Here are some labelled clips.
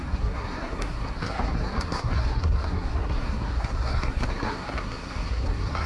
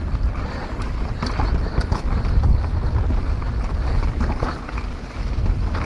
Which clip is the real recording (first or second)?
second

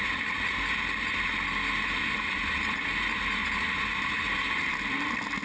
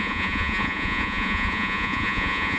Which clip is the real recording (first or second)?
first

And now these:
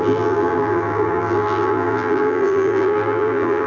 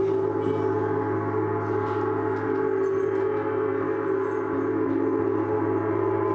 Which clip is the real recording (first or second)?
second